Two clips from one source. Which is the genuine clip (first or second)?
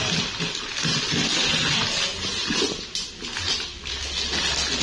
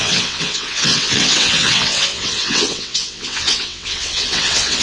first